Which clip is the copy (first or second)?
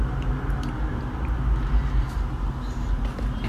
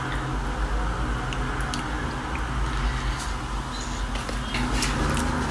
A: first